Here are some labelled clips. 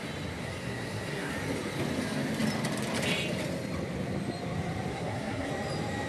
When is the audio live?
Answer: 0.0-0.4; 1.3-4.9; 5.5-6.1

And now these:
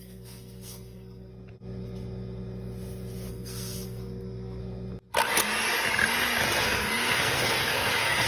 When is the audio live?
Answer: 1.3-3.3; 4.6-6.6

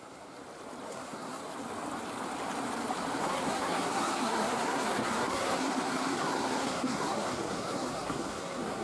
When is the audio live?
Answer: 0.4-0.9; 1.4-3.2

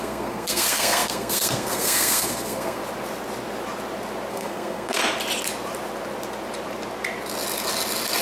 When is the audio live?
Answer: 2.8-4.3; 5.0-8.2

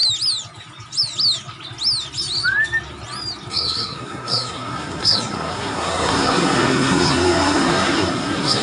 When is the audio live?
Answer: 0.0-3.5

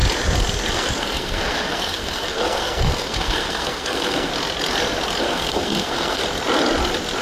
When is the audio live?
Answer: 0.0-0.7; 4.3-5.2; 6.2-7.2